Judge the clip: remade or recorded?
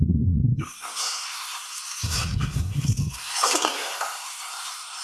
remade